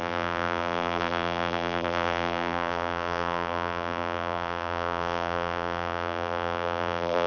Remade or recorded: remade